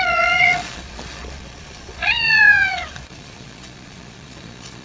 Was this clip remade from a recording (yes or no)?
yes